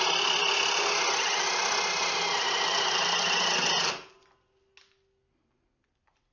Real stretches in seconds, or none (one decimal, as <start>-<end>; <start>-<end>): 0.0-6.3